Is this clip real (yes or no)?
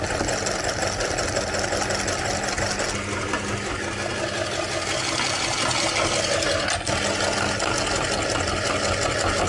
yes